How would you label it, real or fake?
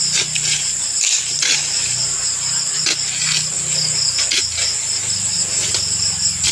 real